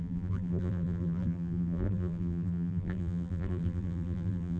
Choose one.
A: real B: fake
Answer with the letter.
B